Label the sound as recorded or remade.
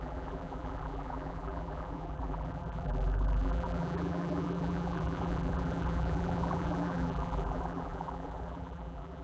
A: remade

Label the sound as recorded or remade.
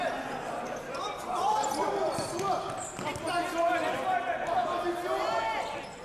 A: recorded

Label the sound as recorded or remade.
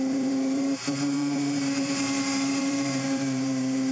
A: remade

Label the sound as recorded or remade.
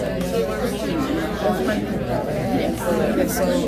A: recorded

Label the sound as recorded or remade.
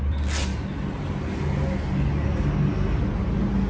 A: recorded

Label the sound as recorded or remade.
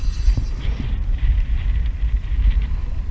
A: remade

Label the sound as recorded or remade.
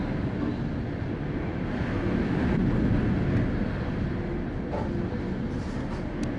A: recorded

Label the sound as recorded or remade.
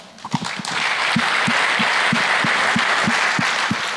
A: recorded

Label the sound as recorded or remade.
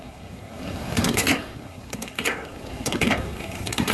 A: remade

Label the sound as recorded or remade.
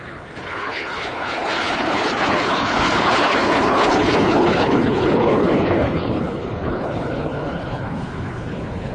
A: remade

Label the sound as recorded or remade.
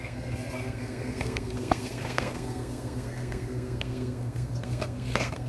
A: remade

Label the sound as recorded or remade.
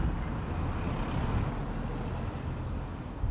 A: recorded